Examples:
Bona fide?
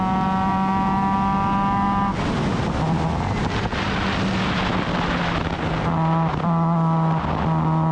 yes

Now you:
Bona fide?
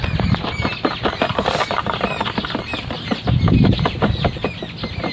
yes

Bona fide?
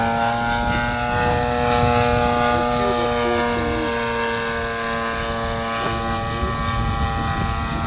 yes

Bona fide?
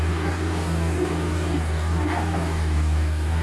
no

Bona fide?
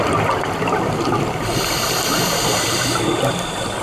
yes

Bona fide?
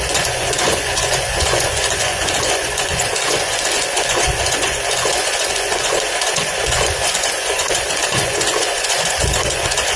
no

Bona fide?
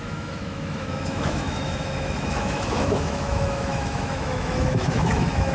no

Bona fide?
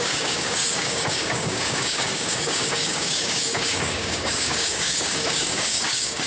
no